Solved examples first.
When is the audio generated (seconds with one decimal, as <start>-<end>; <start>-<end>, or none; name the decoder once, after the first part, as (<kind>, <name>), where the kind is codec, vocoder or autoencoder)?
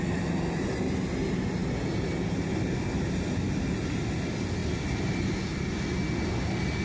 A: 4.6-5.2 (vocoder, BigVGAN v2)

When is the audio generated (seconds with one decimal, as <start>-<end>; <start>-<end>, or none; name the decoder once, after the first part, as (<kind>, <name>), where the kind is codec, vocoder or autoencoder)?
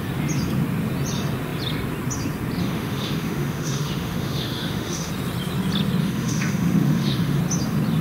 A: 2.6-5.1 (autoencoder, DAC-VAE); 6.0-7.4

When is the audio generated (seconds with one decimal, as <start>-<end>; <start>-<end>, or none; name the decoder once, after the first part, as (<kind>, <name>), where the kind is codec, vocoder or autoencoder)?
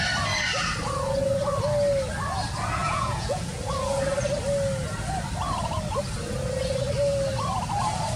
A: 2.8-3.6 (vocoder, Vocos)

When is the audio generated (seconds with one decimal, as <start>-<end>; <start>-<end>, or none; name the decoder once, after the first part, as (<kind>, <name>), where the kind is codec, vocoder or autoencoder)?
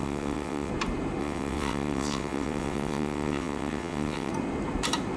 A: 0.0-0.7 (vocoder, WaveNeXt); 1.2-4.3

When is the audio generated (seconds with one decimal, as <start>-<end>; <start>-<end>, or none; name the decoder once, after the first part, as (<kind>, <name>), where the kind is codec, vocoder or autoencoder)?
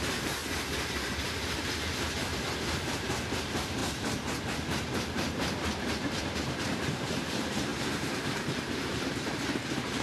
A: 0.0-0.4 (vocoder, BigVGAN v2); 2.8-10.0